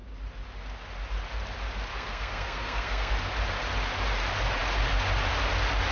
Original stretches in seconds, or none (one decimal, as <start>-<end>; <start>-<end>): 0.0-1.9; 3.1-5.9